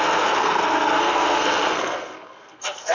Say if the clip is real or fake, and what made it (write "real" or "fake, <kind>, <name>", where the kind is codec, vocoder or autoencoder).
fake, codec, SNAC